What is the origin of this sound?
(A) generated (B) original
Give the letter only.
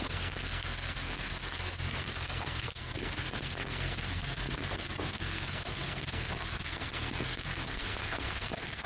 A